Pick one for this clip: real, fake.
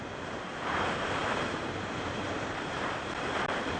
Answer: fake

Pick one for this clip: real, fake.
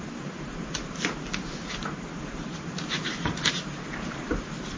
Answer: fake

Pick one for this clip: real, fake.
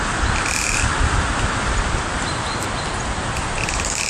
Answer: real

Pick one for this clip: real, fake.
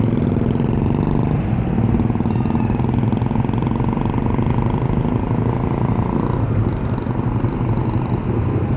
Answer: real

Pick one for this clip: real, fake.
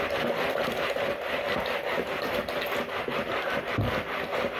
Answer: real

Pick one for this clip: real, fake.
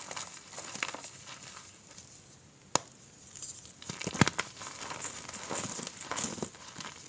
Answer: real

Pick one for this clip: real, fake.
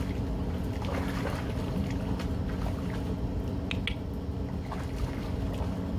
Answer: real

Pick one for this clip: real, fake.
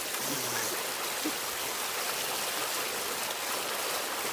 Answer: real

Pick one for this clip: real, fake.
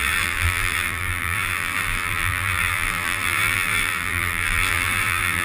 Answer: fake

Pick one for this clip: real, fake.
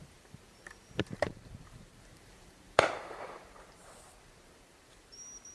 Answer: fake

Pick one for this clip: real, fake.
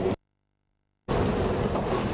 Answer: fake